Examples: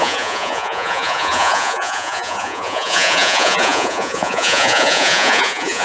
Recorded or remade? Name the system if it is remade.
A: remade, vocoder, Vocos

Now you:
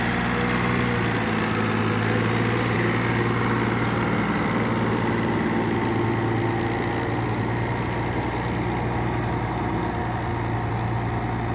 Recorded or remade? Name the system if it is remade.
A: recorded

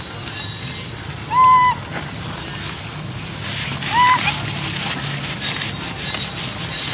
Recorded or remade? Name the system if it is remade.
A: recorded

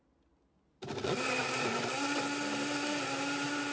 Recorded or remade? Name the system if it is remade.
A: recorded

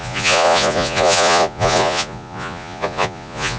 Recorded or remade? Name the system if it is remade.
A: remade, vocoder, Vocos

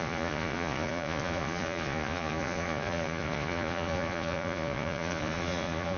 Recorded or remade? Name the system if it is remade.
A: remade, vocoder, Vocos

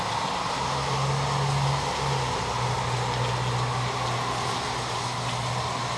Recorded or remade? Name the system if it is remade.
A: recorded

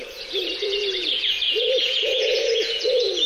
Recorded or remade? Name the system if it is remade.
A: remade, vocoder, Vocos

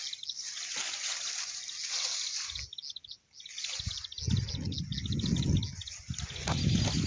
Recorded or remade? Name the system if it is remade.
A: recorded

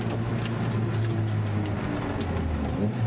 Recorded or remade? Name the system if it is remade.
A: recorded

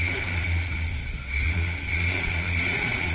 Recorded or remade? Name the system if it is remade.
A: remade, vocoder, Vocos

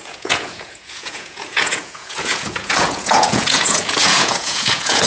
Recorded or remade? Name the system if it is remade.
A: remade, vocoder, Vocos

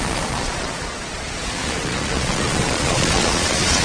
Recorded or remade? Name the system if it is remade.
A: remade, vocoder, Vocos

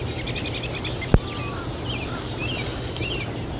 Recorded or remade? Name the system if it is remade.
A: recorded